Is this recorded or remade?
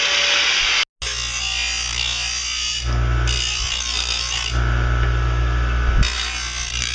recorded